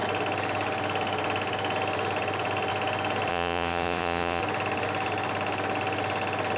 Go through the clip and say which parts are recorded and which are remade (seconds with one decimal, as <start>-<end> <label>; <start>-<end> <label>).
0.0-3.3 recorded; 3.3-4.4 remade; 4.4-6.6 recorded